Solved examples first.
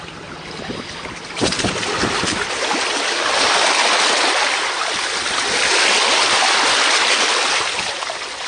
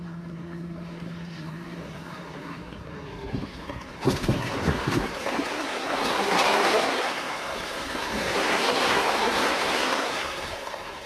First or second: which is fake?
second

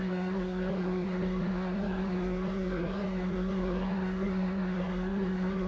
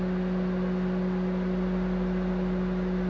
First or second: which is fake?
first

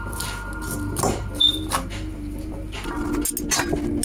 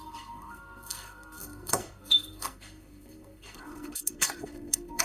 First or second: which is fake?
second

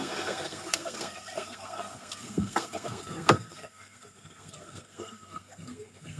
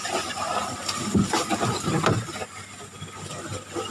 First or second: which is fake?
first